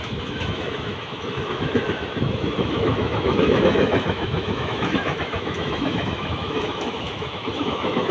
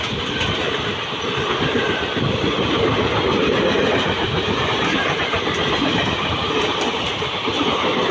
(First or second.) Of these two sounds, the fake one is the first